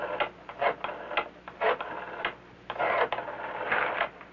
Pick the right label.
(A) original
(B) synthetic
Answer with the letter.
A